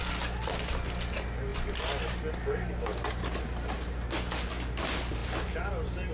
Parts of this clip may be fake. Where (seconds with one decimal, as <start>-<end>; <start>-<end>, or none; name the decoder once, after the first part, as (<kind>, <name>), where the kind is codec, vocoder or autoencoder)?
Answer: none